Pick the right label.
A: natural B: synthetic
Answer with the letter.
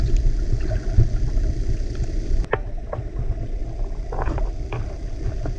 A